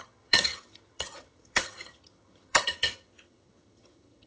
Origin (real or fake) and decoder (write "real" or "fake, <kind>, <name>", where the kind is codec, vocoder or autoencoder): fake, vocoder, HiFi-GAN